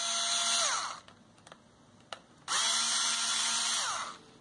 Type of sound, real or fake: real